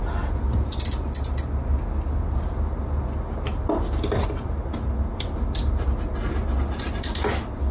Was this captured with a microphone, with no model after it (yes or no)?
yes